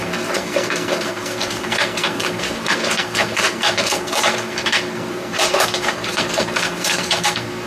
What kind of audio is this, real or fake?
fake